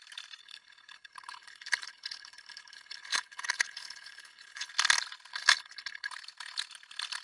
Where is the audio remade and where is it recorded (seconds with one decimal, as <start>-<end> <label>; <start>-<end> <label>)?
0.0-0.4 recorded; 0.4-4.7 remade; 4.7-5.3 recorded; 5.3-6.1 remade; 6.1-7.2 recorded